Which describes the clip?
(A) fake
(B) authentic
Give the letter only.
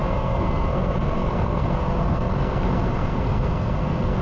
A